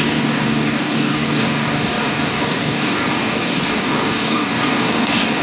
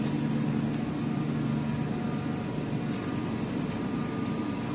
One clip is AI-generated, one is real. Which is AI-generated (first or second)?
first